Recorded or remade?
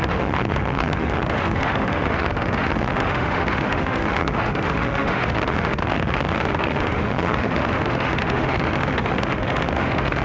remade